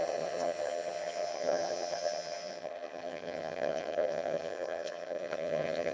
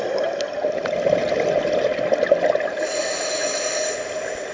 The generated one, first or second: first